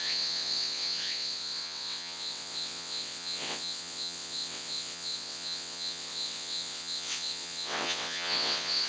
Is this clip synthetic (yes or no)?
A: yes